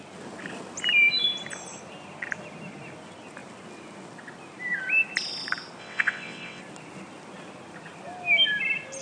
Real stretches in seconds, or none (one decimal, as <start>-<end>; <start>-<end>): 0.0-5.8; 6.6-9.0